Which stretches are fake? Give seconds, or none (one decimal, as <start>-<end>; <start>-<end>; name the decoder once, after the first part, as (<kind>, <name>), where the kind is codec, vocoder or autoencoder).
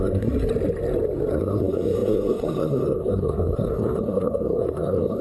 0.0-0.5 (codec, SNAC); 1.3-5.2